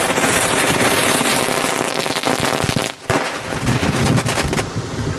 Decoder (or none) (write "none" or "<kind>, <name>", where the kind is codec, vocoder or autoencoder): none